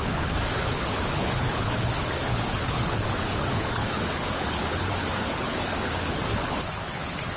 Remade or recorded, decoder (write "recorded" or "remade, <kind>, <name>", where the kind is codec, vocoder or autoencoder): remade, codec, HILCodec